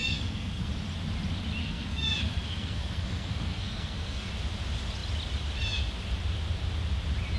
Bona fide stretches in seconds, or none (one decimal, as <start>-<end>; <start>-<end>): 0.7-1.6; 4.3-7.4